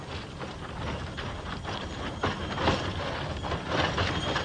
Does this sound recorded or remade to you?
recorded